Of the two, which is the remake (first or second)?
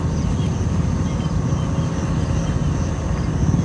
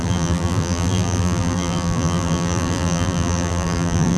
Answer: second